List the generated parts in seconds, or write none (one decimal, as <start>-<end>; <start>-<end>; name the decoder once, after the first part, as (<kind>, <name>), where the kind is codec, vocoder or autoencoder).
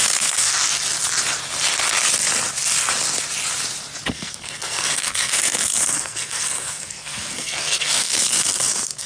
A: 0.0-0.5 (codec, SNAC); 4.1-9.1